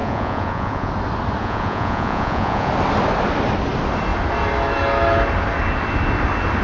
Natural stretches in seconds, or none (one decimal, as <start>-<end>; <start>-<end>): 0.9-1.4; 2.7-6.6